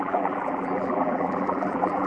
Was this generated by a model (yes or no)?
yes